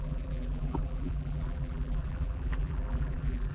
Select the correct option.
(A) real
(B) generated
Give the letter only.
B